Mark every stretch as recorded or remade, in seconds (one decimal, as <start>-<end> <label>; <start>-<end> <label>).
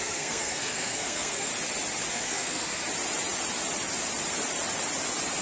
0.0-1.5 remade; 1.5-2.1 recorded; 2.1-2.8 remade; 2.8-5.4 recorded